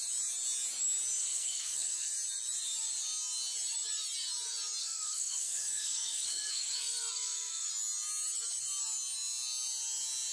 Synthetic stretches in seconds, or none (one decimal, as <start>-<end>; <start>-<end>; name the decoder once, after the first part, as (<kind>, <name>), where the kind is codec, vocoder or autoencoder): 1.2-2.1 (codec, SNAC); 4.8-7.7